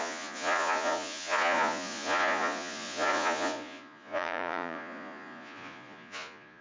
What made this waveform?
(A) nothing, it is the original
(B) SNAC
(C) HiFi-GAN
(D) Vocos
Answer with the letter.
D